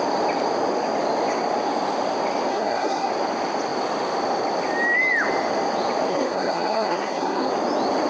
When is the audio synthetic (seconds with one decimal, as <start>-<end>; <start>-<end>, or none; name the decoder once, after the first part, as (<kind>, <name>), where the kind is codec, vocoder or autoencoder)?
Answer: 2.5-3.1 (codec, SNAC); 6.1-7.5